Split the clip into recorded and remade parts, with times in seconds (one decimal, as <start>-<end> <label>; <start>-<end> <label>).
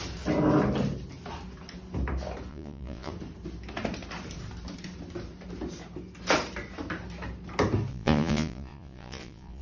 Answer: 0.0-2.5 recorded; 2.5-3.1 remade; 3.1-7.9 recorded; 7.9-9.6 remade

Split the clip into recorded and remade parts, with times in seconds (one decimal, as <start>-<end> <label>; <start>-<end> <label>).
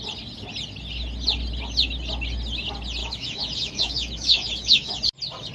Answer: 0.0-3.0 recorded; 3.0-5.0 remade; 5.0-5.5 recorded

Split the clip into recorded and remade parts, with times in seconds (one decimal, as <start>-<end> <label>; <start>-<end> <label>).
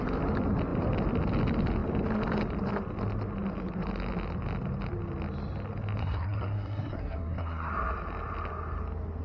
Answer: 0.0-6.0 recorded; 6.0-7.7 remade; 7.7-9.2 recorded